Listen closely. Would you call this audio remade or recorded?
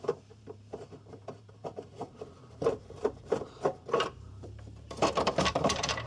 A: remade